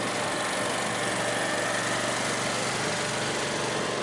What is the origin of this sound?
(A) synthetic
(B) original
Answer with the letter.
B